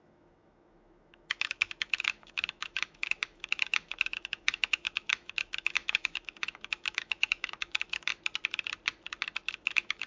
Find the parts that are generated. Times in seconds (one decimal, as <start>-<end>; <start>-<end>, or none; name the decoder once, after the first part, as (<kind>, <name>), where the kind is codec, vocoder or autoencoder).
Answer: 0.0-8.1 (autoencoder, DAC-VAE); 9.5-10.1

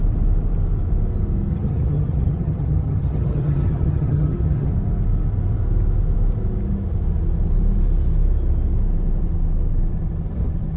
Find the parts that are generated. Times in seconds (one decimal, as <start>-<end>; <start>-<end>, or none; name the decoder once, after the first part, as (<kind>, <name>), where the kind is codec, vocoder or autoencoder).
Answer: 1.5-4.7 (vocoder, HiFi-GAN)